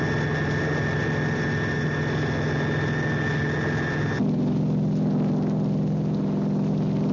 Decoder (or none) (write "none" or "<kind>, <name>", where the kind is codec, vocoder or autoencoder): none